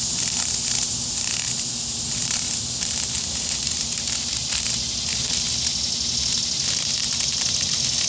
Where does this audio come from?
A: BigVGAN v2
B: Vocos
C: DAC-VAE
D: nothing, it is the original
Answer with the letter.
D